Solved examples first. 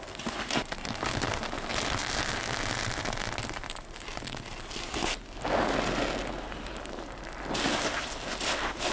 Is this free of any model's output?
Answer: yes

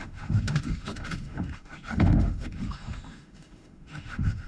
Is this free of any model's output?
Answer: no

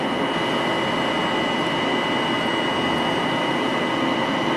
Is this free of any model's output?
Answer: yes